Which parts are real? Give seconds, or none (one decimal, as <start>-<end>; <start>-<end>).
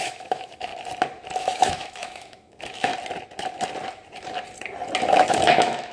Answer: 0.7-1.4; 2.9-5.0